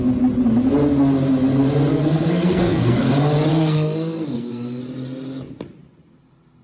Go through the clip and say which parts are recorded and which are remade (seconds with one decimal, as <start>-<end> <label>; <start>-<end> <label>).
0.0-1.9 recorded; 1.9-3.1 remade; 3.1-3.5 recorded; 3.5-4.8 remade; 4.8-6.6 recorded